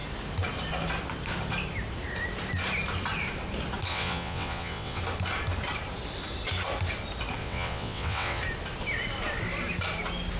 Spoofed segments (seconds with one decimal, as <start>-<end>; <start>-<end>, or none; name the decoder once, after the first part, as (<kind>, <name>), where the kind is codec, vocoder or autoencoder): 3.9-5.0 (vocoder, WaveNeXt); 7.4-8.4